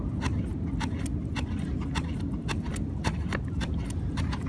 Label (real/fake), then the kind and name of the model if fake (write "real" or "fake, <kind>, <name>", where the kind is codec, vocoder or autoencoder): real